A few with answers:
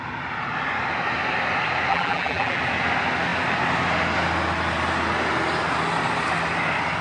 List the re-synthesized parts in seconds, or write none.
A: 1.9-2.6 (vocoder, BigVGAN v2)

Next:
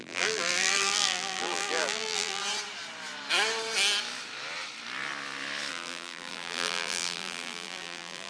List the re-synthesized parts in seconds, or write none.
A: 0.0-2.4 (vocoder, BigVGAN v2); 5.7-8.3